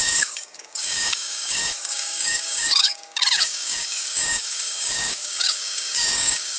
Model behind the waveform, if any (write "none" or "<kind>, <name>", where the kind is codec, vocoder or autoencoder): codec, DAC